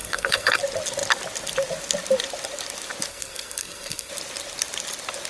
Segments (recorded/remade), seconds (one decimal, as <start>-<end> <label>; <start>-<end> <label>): 0.0-0.6 remade; 0.6-3.1 recorded; 3.1-4.1 remade; 4.1-5.3 recorded